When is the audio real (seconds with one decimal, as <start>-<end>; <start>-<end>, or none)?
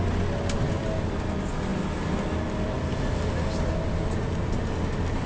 0.0-5.3